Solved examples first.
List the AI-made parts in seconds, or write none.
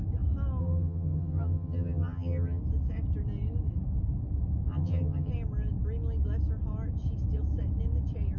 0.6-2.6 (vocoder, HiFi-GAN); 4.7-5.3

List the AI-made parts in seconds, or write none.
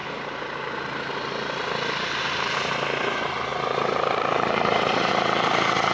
3.5-5.1 (vocoder, BigVGAN v2)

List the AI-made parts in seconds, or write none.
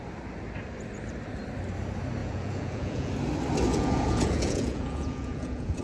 2.2-3.1 (vocoder, Vocos); 3.7-5.8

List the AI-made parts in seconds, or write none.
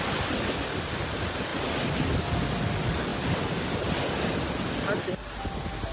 none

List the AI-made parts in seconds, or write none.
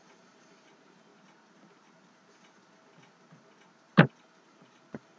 0.0-1.1 (vocoder, BigVGAN v2); 4.2-5.2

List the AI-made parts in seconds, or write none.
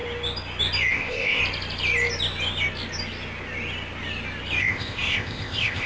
0.9-1.4 (codec, ZipCodec); 4.6-5.9